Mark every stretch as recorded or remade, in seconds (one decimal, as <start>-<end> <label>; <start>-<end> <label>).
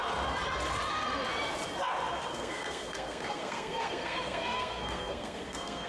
0.0-2.3 recorded; 2.3-5.9 remade